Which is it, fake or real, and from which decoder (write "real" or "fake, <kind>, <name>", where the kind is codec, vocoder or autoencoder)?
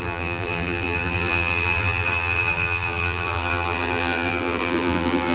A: fake, vocoder, BigVGAN v2